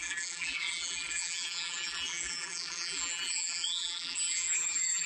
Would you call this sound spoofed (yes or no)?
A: yes